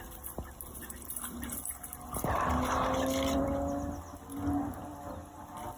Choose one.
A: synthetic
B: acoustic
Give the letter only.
B